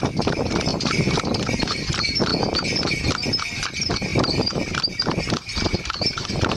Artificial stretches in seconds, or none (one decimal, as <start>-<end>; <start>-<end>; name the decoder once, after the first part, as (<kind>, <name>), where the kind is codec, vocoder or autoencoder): 0.0-2.3 (vocoder, BigVGAN v2); 3.4-6.6